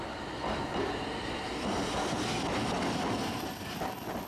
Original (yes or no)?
yes